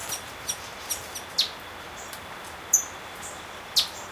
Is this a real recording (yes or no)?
yes